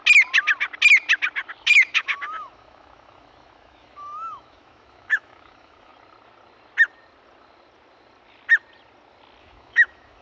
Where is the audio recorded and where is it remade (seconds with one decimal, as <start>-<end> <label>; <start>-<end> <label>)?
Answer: 0.0-1.6 recorded; 1.6-5.9 remade; 5.9-9.4 recorded; 9.4-10.2 remade